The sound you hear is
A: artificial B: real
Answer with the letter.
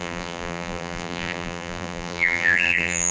A